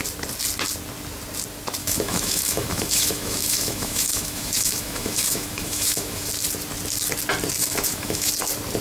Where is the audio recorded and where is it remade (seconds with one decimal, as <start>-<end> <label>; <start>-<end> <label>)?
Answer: 0.0-1.8 recorded; 1.8-6.3 remade; 6.3-7.6 recorded; 7.6-8.3 remade; 8.3-8.8 recorded